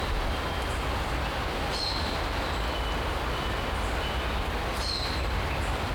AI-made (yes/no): no